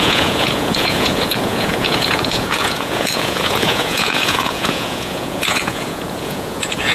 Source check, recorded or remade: remade